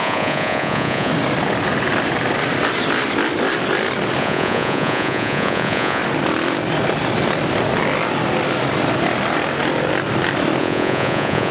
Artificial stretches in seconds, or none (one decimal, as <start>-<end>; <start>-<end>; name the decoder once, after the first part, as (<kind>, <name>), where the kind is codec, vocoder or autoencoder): 0.0-1.1 (vocoder, Vocos); 4.2-6.0; 10.6-11.5